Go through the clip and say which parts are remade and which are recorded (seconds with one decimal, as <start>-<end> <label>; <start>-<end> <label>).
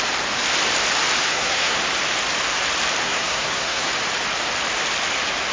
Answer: 0.0-1.2 recorded; 1.2-1.8 remade; 1.8-3.0 recorded; 3.0-3.9 remade; 3.9-5.5 recorded